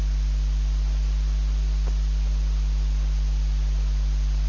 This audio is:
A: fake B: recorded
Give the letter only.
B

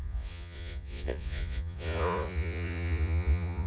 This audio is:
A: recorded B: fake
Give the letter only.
B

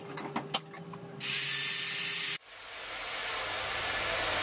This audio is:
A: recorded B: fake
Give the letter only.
A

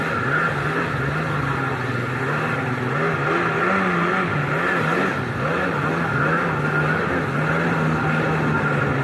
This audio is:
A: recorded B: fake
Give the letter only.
A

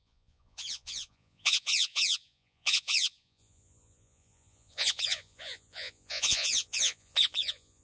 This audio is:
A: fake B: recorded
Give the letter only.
A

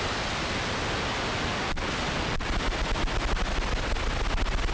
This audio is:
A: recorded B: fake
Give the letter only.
A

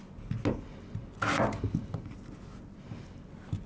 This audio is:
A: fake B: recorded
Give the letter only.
B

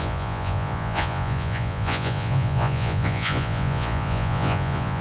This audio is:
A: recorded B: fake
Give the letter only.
B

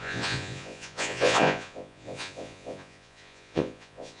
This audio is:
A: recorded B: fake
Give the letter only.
B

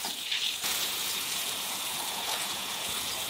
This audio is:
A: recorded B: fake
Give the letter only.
B